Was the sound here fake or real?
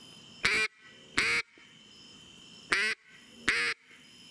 real